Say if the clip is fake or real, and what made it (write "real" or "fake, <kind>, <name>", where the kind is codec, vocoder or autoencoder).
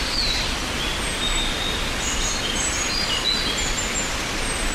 real